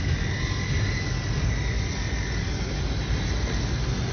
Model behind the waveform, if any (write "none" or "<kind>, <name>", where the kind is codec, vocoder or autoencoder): none